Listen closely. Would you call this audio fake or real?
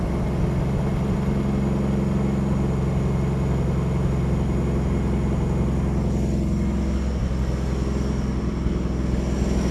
real